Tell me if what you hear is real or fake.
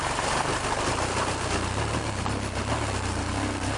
real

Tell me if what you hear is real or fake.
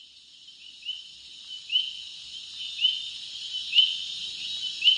real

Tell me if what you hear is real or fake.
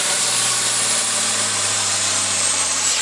fake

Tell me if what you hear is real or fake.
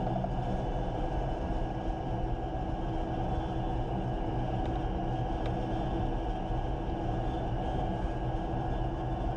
real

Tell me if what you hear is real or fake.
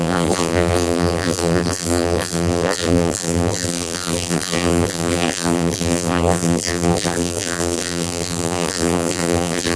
fake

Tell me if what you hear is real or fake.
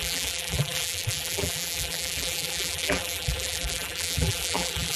fake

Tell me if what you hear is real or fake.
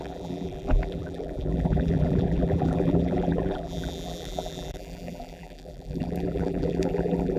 fake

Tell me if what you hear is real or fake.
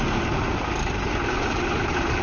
real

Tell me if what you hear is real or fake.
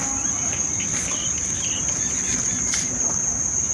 real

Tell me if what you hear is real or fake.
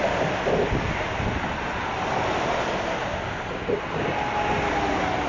real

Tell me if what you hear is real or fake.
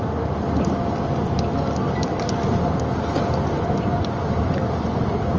real